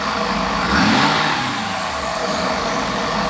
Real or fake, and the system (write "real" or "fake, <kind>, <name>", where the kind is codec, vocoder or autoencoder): fake, codec, DAC